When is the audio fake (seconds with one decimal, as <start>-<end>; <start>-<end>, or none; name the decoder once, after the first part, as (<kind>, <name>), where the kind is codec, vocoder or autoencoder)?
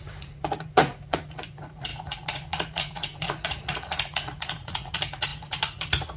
0.0-6.2 (vocoder, Vocos)